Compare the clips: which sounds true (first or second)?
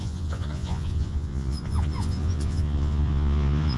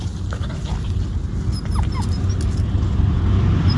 second